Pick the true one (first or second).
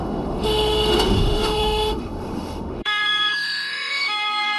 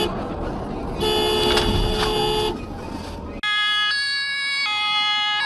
second